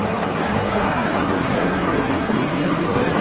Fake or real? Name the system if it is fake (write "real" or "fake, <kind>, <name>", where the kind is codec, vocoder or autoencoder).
fake, codec, SNAC